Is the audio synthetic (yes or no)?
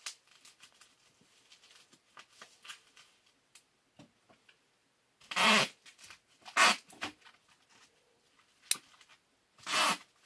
no